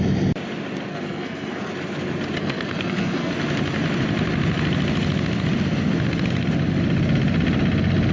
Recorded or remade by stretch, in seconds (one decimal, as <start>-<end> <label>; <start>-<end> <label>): 0.0-0.9 recorded; 0.9-1.7 remade; 1.7-2.4 recorded; 2.4-3.3 remade; 3.3-8.1 recorded

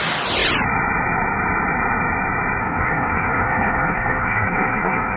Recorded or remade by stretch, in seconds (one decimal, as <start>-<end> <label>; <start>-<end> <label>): 0.0-2.6 recorded; 2.6-5.2 remade